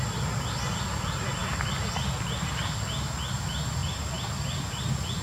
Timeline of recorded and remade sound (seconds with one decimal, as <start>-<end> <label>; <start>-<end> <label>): 0.0-5.2 recorded